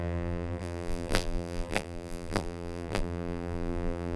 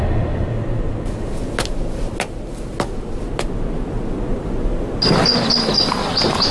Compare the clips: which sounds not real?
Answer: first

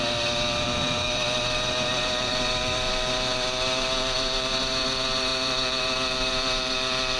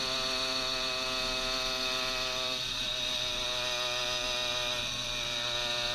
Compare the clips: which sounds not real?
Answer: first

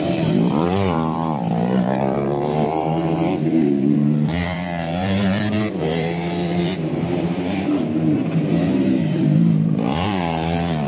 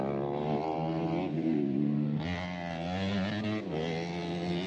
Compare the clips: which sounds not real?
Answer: first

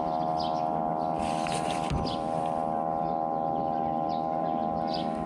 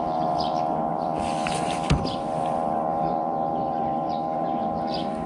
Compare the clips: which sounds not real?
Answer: second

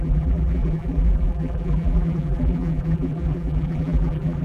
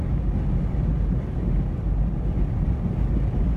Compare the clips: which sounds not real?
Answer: first